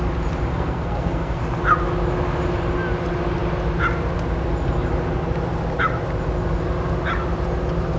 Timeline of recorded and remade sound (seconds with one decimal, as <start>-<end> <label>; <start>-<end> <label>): 0.0-0.5 recorded; 0.5-1.4 remade; 1.4-8.0 recorded